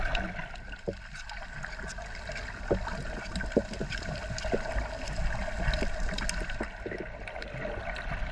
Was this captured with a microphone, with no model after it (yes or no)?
yes